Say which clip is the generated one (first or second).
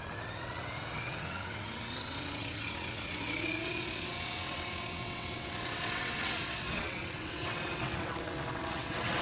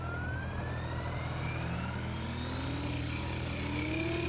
first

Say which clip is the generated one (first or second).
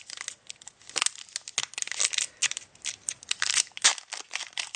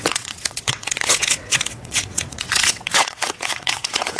second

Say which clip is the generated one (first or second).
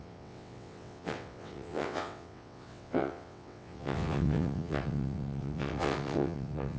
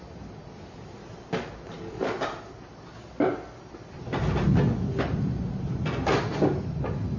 first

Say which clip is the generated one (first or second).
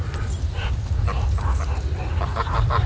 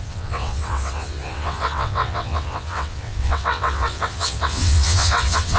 second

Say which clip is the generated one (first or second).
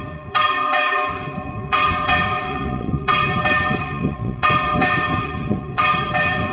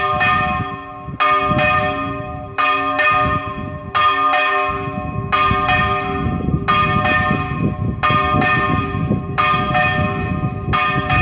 first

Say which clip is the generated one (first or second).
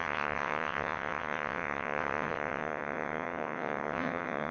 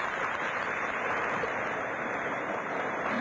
first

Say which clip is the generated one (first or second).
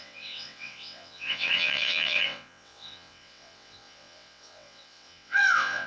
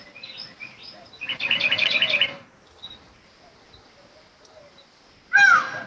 first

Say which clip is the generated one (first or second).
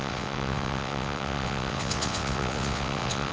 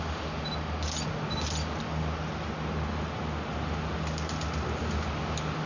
first